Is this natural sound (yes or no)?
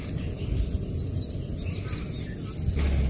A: yes